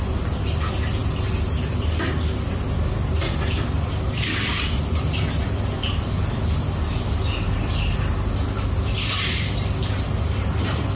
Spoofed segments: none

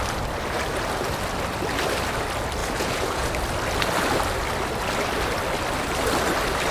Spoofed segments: 2.6-3.3 (vocoder, Vocos)

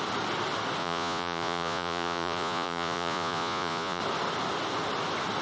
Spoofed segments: 0.8-4.0 (vocoder, Vocos)